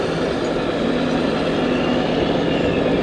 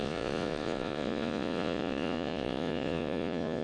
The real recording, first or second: first